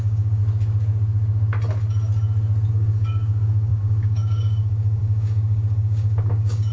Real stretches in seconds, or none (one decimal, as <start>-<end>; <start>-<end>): 0.4-2.7